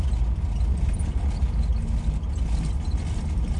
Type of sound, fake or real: real